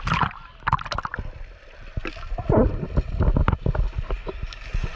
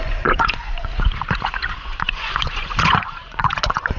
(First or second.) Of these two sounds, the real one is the first